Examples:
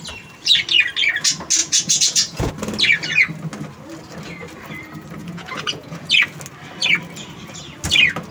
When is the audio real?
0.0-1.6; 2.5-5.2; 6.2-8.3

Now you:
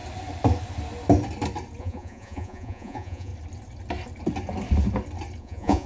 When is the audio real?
0.0-1.8; 3.3-5.4